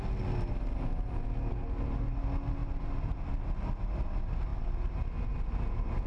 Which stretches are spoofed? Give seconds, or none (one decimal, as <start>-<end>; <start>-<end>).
none